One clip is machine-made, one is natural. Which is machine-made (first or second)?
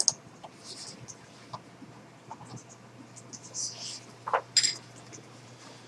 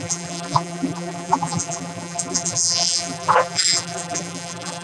second